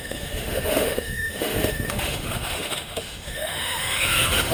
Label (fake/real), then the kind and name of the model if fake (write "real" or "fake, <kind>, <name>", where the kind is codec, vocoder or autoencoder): fake, autoencoder, DAC-VAE